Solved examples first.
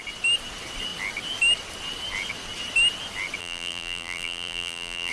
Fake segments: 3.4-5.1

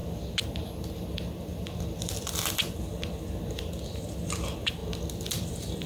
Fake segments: 0.5-4.8; 5.3-5.9

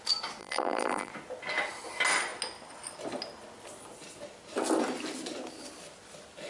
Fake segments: 0.4-1.1